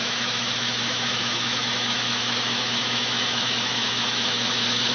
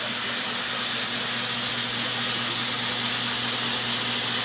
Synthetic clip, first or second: first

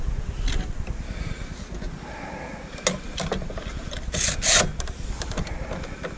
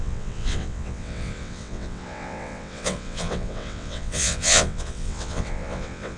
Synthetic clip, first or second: second